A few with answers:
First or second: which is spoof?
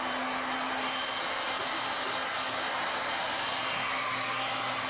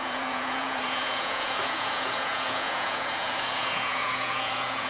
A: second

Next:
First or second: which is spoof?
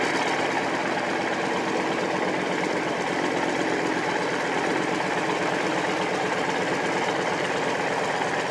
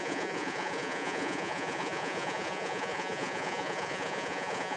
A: second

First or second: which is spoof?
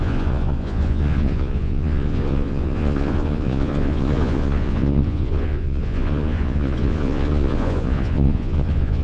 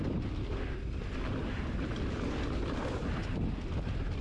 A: first